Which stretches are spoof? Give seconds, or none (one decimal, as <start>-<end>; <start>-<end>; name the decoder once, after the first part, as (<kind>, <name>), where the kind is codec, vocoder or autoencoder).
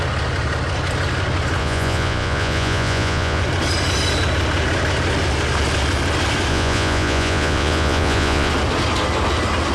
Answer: 1.6-3.4 (vocoder, Vocos); 6.5-8.5